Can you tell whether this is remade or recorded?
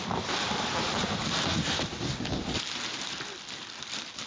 recorded